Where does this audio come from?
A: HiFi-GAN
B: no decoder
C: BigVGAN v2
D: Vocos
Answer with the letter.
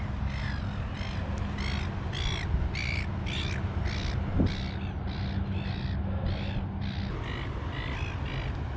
B